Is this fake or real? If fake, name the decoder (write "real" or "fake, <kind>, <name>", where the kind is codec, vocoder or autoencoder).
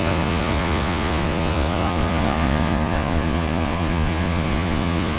fake, vocoder, Vocos